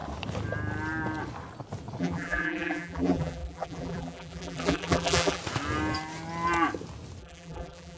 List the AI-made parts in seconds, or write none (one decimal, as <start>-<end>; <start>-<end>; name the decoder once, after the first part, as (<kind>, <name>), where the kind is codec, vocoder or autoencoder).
2.0-5.4 (vocoder, BigVGAN v2); 7.2-8.0